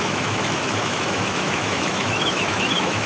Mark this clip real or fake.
fake